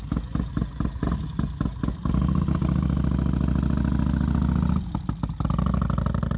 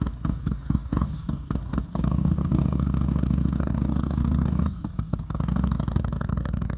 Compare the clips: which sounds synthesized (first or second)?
second